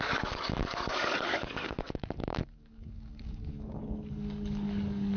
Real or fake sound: fake